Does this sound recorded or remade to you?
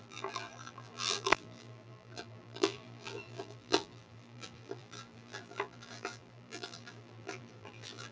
remade